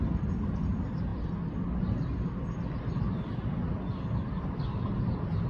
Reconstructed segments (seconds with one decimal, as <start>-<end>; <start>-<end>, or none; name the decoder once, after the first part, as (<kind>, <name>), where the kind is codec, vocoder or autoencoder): none